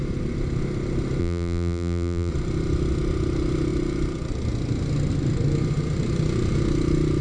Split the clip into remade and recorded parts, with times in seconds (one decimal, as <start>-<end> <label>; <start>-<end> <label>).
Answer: 0.0-1.2 recorded; 1.2-2.3 remade; 2.3-7.2 recorded